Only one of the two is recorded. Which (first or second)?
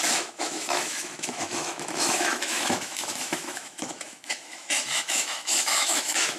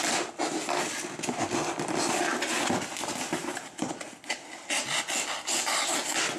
second